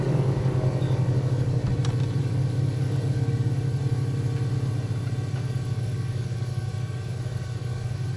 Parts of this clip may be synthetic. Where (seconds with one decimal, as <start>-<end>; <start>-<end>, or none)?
0.0-1.6; 2.2-3.8; 5.3-8.2